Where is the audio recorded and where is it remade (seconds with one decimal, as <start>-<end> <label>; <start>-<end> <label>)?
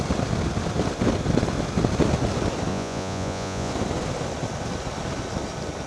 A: 0.0-2.7 recorded; 2.7-3.7 remade; 3.7-5.9 recorded